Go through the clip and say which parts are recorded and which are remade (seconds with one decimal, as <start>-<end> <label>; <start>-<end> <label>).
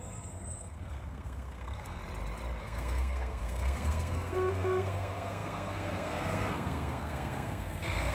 0.0-2.0 remade; 2.0-2.6 recorded; 2.6-8.1 remade